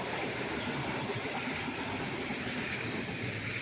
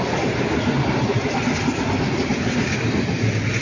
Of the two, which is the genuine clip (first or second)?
second